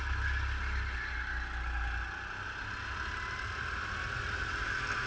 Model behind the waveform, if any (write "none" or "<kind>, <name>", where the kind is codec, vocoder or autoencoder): none